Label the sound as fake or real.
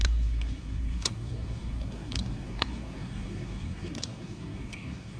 fake